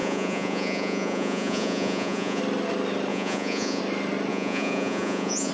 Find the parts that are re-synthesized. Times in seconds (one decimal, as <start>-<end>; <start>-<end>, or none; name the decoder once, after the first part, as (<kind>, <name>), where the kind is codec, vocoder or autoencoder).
0.0-2.4 (vocoder, Vocos); 3.1-3.8; 4.3-5.5